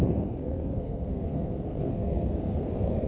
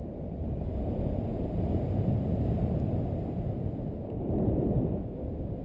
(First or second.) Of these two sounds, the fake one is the first